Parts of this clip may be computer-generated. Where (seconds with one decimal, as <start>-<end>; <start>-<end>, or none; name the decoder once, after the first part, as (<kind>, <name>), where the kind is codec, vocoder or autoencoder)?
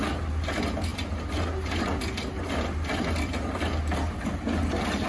none